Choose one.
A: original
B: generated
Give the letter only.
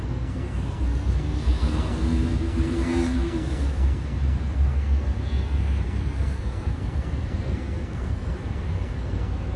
B